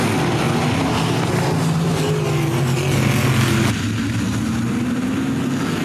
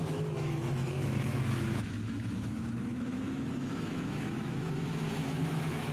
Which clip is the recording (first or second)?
first